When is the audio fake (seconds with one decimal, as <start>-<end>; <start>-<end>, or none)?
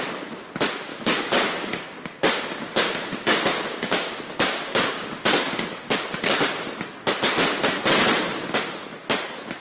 0.9-5.9